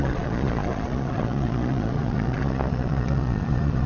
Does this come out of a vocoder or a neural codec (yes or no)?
yes